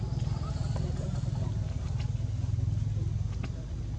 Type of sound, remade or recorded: recorded